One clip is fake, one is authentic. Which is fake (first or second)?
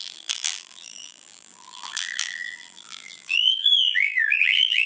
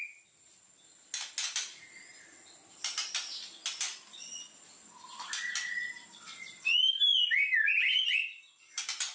first